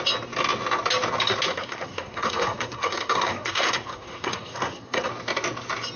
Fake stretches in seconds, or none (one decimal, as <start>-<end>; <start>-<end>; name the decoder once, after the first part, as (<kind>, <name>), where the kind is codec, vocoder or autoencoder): 1.5-5.1 (codec, SNAC)